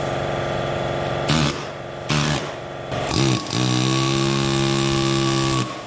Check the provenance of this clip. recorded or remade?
recorded